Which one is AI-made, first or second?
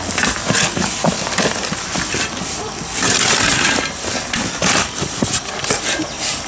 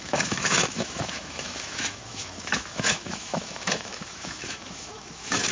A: second